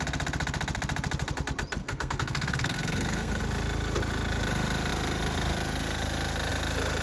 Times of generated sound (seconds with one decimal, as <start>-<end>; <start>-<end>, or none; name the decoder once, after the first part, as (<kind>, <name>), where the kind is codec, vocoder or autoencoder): 1.8-3.4 (codec, SNAC)